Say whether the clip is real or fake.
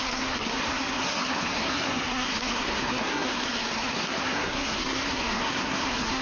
fake